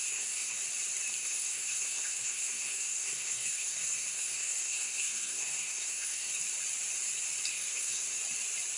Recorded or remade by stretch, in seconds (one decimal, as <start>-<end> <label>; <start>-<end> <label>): 0.0-0.6 remade; 0.6-1.2 recorded; 1.2-6.3 remade; 6.3-7.5 recorded; 7.5-8.2 remade; 8.2-8.8 recorded